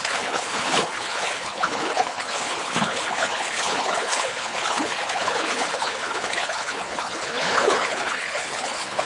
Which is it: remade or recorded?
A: remade